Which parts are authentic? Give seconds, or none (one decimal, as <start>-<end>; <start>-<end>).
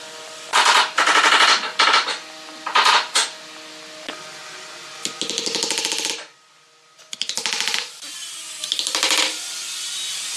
0.0-10.4